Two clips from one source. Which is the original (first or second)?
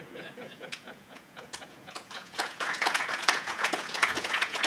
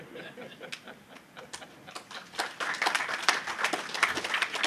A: second